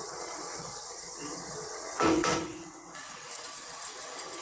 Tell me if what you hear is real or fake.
fake